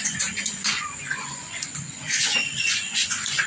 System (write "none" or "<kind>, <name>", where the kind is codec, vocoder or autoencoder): vocoder, Vocos